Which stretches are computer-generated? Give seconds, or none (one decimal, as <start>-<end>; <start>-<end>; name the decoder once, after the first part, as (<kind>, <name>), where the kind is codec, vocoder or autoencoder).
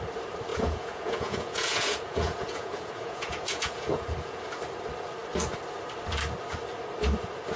0.5-4.5 (vocoder, Vocos)